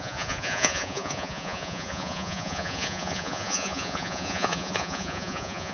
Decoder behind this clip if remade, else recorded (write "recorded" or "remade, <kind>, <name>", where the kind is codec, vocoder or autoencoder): remade, vocoder, Vocos